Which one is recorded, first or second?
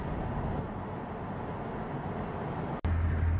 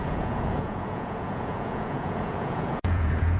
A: first